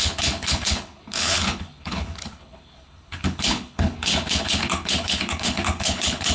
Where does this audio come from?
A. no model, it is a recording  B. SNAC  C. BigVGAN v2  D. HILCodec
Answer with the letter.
D